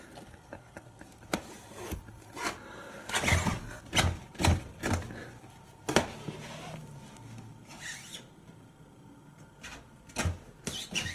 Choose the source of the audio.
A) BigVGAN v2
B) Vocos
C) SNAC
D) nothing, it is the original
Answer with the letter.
D